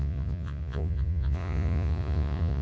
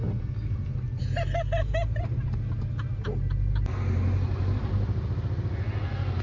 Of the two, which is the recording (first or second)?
second